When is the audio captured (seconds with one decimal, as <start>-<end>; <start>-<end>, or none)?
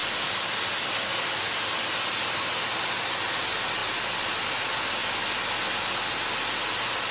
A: 0.0-7.1